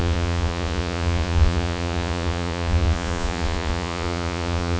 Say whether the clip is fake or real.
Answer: fake